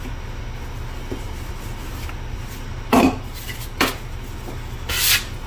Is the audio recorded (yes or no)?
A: yes